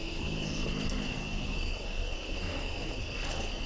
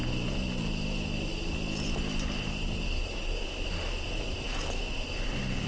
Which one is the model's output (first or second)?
first